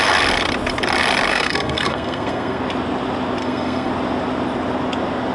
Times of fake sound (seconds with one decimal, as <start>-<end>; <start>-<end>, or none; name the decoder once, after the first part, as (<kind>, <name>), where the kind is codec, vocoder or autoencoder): 1.3-2.6 (codec, SNAC); 3.4-3.9